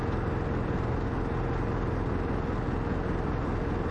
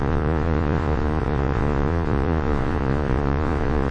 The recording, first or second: first